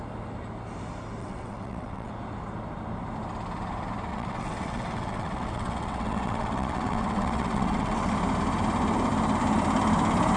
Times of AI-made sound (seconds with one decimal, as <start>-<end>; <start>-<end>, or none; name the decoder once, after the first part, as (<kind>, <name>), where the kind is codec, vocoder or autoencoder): 1.2-2.1 (vocoder, WaveNeXt); 4.1-8.1